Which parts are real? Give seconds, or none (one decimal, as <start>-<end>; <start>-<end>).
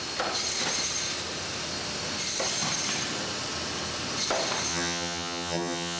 0.0-4.7